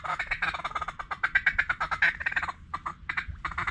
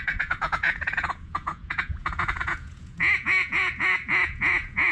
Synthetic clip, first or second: second